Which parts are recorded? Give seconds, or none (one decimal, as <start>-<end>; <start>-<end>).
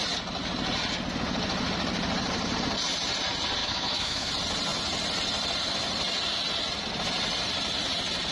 0.0-3.6; 4.3-8.3